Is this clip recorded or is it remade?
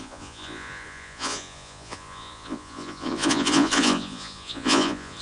remade